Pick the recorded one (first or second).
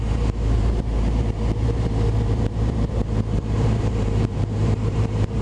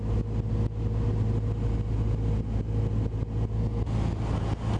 second